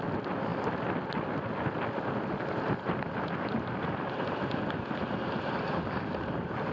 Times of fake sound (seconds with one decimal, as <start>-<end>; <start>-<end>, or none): none